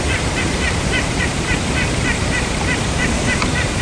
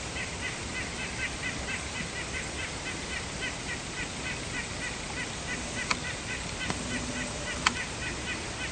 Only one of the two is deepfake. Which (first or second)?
first